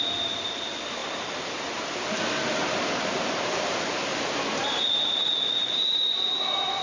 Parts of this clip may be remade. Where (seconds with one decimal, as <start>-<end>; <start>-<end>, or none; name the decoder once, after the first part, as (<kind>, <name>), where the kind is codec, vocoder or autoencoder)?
0.0-6.8 (vocoder, BigVGAN v2)